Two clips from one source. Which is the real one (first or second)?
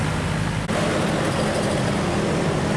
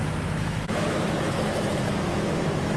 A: first